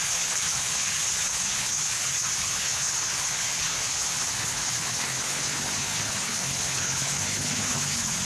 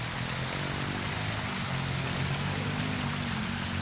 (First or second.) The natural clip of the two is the second